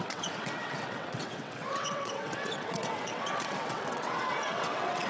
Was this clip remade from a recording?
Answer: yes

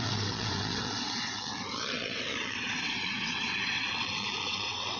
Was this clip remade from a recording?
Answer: yes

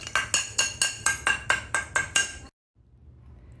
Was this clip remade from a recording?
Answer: no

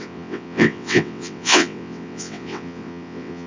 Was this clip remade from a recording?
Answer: yes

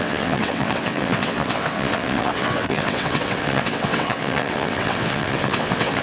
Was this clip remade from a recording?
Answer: yes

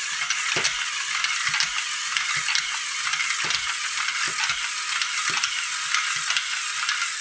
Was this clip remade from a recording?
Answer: no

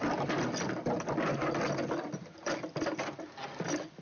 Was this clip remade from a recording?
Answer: no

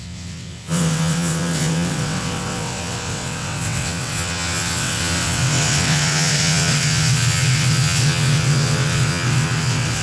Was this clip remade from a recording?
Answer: yes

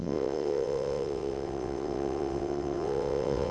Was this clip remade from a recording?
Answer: yes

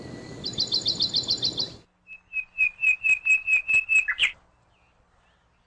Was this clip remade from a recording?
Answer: no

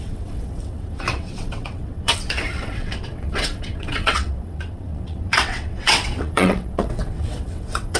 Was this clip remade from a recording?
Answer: yes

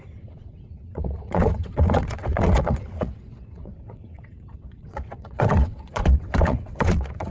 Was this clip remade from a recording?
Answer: yes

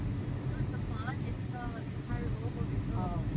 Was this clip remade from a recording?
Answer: no